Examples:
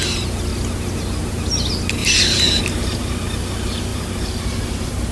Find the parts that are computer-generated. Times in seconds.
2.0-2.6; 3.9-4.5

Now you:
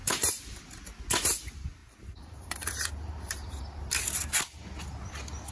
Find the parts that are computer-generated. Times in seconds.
0.0-0.6; 1.8-3.6